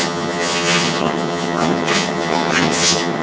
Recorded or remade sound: remade